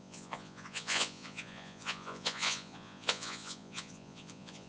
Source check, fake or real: fake